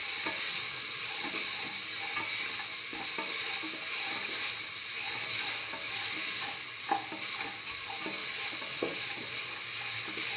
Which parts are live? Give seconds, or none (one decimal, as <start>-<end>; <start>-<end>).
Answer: 1.7-8.2; 9.5-10.4